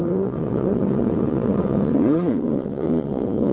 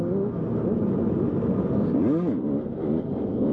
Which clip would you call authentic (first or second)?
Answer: second